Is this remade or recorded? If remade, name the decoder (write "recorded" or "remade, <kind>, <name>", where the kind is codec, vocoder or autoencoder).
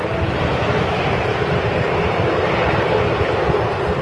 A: remade, vocoder, BigVGAN v2